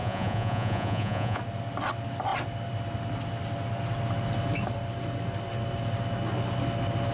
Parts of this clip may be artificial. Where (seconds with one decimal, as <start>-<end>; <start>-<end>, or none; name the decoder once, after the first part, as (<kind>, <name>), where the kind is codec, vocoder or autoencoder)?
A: 0.0-1.4 (vocoder, Vocos)